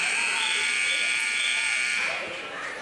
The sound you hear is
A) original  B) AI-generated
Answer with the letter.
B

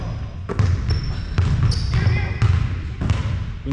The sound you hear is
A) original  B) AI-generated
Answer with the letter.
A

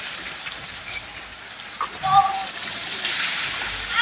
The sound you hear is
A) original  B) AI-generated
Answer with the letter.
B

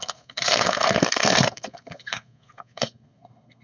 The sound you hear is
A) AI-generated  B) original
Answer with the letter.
A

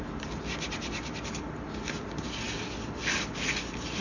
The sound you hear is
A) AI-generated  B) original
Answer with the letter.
B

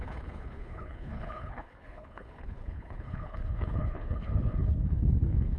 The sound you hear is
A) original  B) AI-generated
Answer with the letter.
B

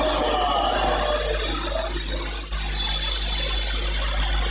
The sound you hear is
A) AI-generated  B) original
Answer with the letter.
B